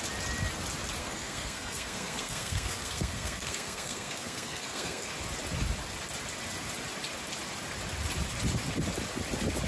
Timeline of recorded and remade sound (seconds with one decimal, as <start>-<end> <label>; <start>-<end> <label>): 0.0-1.0 recorded; 1.0-5.1 remade; 5.1-9.7 recorded